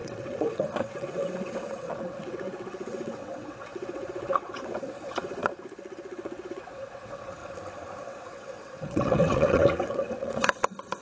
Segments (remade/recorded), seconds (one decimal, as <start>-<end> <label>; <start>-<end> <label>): 0.0-7.4 remade; 7.4-8.0 recorded; 8.0-11.0 remade